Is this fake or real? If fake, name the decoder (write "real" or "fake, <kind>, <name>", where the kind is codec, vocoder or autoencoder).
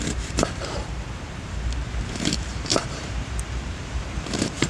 fake, vocoder, BigVGAN v2